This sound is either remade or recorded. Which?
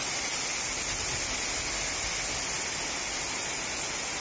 recorded